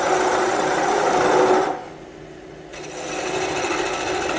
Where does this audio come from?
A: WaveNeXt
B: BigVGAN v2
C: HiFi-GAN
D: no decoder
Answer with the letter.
D